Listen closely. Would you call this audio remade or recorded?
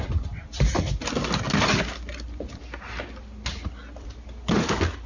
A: recorded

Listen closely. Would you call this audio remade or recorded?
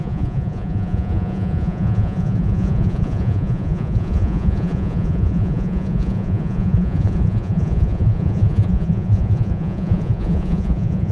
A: remade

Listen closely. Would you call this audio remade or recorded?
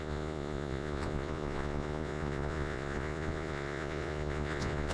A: remade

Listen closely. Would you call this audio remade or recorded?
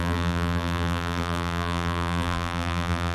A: remade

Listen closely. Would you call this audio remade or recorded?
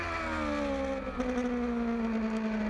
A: recorded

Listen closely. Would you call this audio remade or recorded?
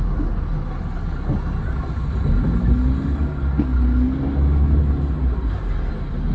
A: recorded